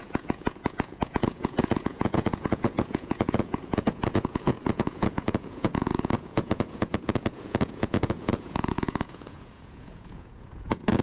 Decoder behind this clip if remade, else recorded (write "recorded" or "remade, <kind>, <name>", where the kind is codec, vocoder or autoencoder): remade, vocoder, Vocos